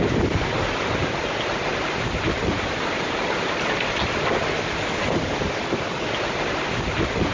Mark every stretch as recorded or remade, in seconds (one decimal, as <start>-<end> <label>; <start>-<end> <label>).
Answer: 0.0-7.3 recorded